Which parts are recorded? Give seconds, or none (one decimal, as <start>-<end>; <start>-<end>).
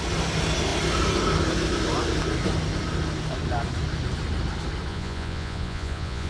0.0-4.9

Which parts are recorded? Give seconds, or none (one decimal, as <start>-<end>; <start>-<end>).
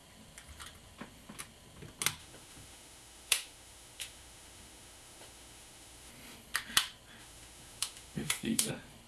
0.0-2.2; 6.1-7.2; 8.7-9.1